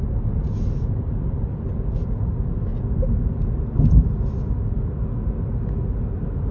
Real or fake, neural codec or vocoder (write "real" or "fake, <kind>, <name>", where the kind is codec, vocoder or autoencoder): real